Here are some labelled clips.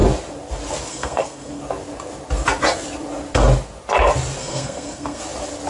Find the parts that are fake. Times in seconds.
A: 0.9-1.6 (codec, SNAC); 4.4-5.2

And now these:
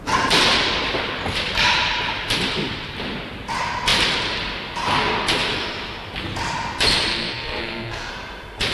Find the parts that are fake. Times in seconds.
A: 7.1-8.1 (codec, SNAC)

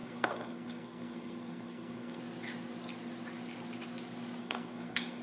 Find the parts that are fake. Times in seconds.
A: 0.0-2.2 (codec, SNAC); 4.4-5.2

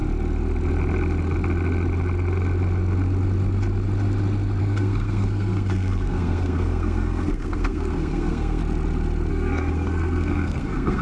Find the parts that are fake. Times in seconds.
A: 4.6-8.6 (codec, SNAC); 9.3-11.0